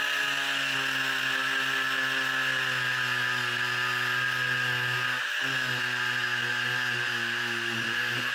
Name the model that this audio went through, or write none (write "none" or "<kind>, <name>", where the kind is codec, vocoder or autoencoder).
none